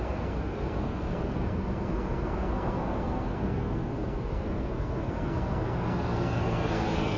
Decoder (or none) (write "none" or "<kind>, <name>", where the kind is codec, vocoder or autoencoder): codec, SNAC